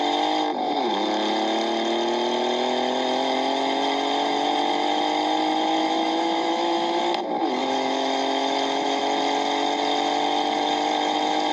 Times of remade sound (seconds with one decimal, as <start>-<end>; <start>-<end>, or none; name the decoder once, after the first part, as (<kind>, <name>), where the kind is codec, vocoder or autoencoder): 5.8-7.0 (autoencoder, DAC-VAE); 7.6-9.0